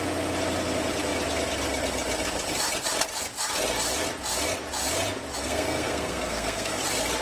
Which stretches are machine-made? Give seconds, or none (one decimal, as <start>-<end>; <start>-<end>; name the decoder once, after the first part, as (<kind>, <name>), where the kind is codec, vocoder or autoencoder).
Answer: 5.4-6.8 (codec, SNAC)